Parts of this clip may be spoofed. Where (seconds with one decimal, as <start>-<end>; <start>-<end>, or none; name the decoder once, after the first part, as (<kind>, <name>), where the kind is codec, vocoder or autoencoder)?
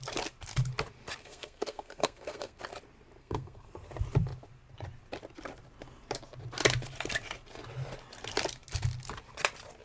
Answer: 1.2-2.6 (codec, SNAC); 3.2-3.7